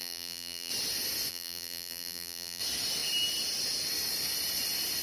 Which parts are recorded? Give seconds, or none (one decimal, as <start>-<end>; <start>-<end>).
0.7-1.3; 2.6-5.0